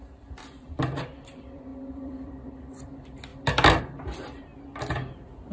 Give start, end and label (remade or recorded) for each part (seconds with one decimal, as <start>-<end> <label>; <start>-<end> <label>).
0.0-3.3 remade; 3.3-3.8 recorded; 3.8-4.5 remade; 4.5-5.5 recorded